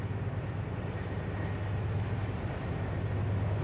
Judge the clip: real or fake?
real